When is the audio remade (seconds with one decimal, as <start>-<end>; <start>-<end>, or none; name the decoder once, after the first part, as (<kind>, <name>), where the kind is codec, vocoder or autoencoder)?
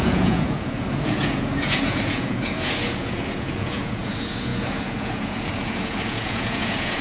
0.0-7.0 (vocoder, Vocos)